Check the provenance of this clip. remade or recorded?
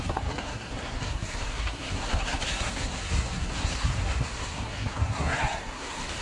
remade